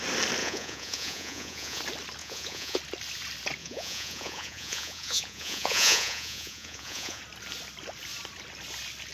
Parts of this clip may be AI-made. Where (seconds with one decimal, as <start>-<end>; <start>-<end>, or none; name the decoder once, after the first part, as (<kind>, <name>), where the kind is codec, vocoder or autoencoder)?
0.4-1.8 (vocoder, Vocos); 2.2-2.8; 3.6-7.2